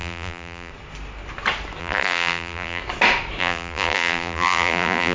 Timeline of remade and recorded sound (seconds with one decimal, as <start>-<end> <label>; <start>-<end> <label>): 0.0-0.7 remade; 0.7-1.8 recorded; 1.8-2.8 remade; 2.8-3.4 recorded; 3.4-5.1 remade

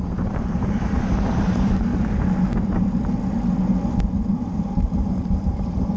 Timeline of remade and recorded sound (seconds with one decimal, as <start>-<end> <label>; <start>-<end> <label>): 0.0-1.9 remade; 1.9-4.3 recorded; 4.3-6.0 remade

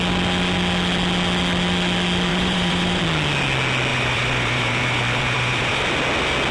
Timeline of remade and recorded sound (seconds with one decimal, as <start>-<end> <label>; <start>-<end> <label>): 0.0-2.3 recorded; 2.3-3.0 remade; 3.0-3.9 recorded; 3.9-5.8 remade; 5.8-6.5 recorded

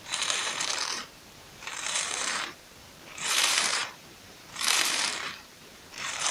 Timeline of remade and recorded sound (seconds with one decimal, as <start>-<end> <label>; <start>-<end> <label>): 0.0-6.3 remade

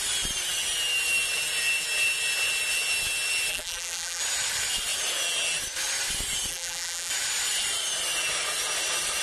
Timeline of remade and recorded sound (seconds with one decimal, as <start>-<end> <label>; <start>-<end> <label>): 0.0-3.5 recorded; 3.5-4.2 remade; 4.2-6.5 recorded; 6.5-7.1 remade; 7.1-9.2 recorded

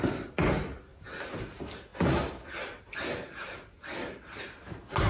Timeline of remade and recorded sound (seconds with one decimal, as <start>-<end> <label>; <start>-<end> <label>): 0.0-5.1 recorded

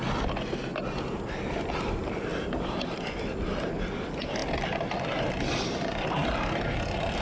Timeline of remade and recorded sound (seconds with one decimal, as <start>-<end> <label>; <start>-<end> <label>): 0.0-7.2 recorded

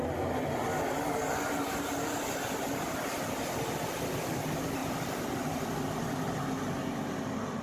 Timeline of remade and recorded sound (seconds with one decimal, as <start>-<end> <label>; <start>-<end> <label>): 0.0-7.6 recorded